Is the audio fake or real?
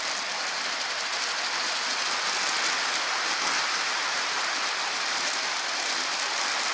real